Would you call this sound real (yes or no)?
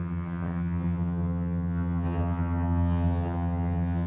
no